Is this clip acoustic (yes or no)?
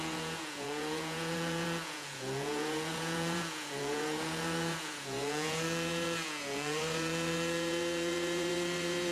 no